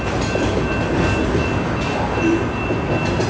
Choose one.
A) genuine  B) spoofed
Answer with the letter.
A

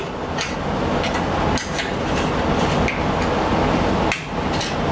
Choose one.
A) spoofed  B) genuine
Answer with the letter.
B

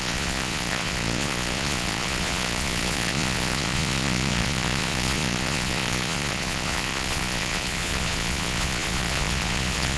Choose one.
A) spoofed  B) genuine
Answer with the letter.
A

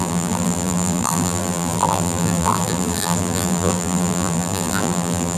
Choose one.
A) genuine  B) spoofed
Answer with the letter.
B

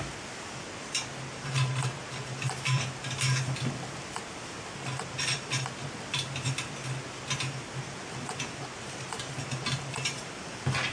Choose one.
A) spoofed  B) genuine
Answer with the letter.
B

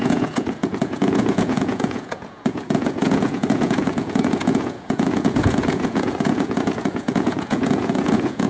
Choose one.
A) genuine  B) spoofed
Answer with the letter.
B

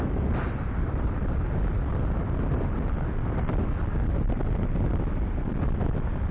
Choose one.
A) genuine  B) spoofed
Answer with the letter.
B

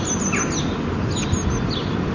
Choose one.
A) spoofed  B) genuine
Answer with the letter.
B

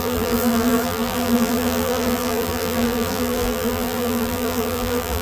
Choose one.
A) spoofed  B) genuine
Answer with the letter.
A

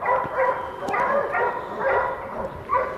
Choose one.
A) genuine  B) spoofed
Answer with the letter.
A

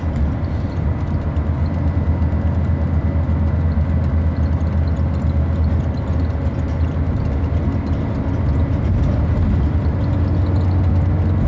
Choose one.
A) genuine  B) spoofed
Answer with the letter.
A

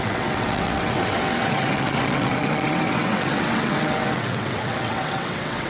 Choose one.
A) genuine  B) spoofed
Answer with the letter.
B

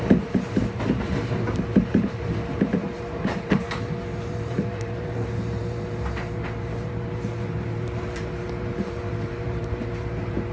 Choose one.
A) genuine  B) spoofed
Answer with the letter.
B